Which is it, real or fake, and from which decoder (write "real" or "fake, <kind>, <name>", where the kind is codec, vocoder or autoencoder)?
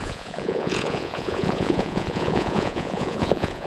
fake, vocoder, Vocos